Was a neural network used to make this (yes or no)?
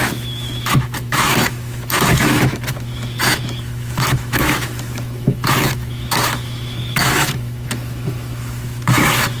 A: yes